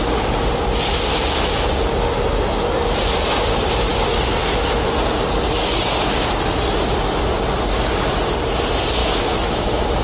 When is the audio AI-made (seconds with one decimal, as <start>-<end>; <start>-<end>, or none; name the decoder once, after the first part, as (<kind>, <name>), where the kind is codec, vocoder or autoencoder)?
1.1-1.7 (autoencoder, DAC-VAE); 9.0-9.6